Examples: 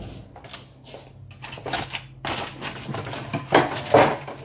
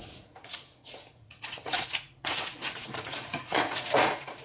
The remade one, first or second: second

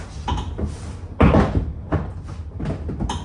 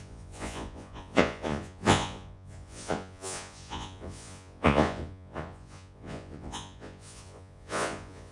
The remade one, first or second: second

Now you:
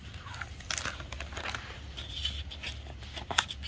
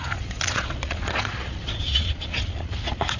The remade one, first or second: second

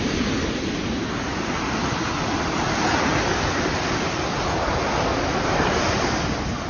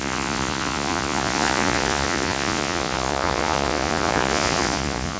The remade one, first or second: second